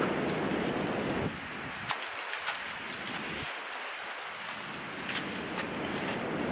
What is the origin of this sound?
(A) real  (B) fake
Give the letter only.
A